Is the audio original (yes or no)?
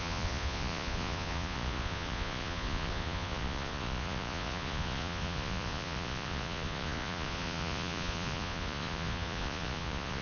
no